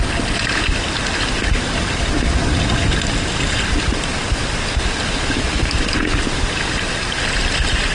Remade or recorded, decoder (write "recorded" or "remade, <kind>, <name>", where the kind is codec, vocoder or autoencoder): recorded